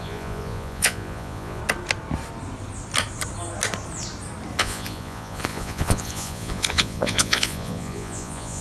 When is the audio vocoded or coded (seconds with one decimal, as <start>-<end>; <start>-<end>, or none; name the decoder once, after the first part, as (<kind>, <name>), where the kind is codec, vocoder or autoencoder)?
0.0-1.6 (vocoder, Vocos); 4.6-8.6